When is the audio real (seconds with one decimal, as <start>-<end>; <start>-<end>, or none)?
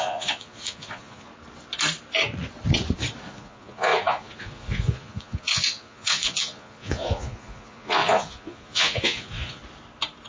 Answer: 1.3-3.3; 9.6-10.3